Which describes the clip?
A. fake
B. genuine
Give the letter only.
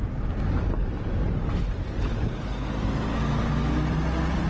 B